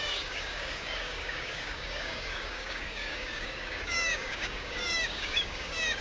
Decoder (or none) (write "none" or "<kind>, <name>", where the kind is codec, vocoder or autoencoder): codec, DAC